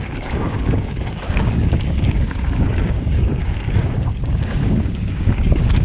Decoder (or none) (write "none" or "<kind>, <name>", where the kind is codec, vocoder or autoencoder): codec, DAC